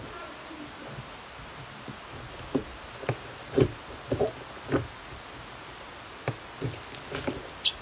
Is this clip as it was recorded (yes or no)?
yes